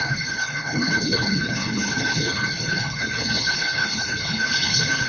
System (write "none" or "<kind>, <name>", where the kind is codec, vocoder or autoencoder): codec, HILCodec